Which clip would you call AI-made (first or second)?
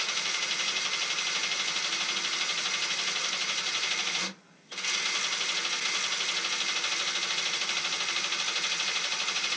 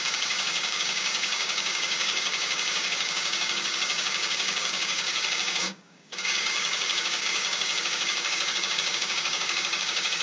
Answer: second